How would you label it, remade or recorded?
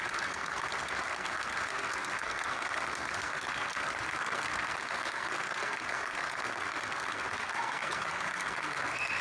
remade